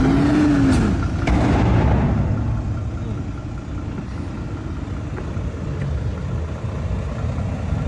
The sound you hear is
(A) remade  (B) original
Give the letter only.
B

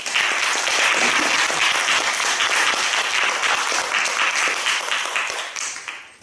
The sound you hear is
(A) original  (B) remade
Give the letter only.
A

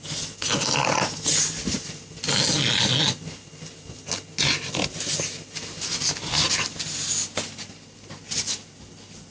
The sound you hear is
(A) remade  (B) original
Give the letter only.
B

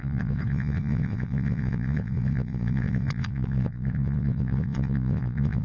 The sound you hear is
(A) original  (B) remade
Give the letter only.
B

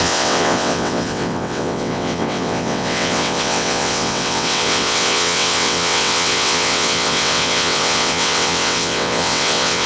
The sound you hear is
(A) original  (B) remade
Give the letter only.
B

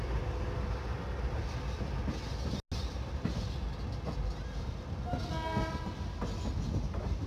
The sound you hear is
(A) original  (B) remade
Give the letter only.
A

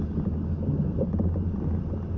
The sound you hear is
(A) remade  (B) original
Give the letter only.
B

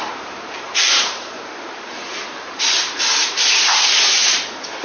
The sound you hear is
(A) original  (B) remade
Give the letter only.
B